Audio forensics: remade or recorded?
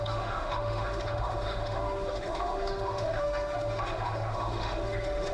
remade